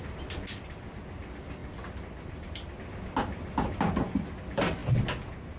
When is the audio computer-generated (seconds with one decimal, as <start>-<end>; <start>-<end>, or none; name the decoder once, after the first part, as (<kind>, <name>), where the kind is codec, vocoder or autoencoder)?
none